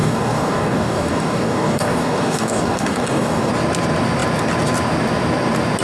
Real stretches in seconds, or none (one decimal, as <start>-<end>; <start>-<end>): 3.5-5.8